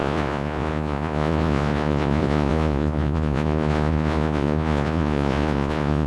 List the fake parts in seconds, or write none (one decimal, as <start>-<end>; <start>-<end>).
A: 0.0-6.1